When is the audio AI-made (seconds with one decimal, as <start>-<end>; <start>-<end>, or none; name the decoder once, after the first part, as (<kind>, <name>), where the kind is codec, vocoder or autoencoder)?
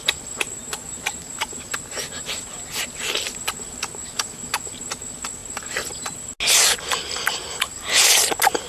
0.6-1.9 (vocoder, BigVGAN v2)